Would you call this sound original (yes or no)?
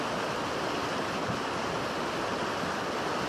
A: yes